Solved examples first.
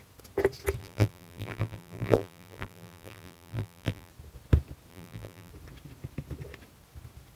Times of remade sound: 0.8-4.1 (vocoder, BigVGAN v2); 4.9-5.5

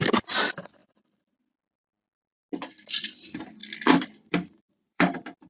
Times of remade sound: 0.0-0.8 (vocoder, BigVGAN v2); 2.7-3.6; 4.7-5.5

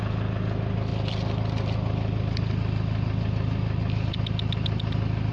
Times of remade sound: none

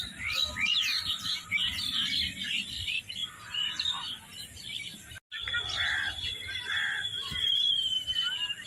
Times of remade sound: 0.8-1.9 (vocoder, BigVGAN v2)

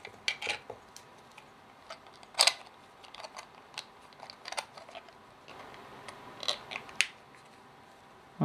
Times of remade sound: none

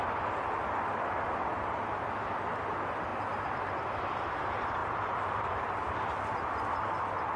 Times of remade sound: 1.5-2.1 (vocoder, BigVGAN v2); 4.8-5.6

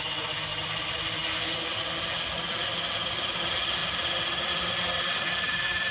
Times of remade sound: none

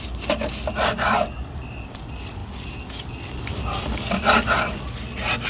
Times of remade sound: none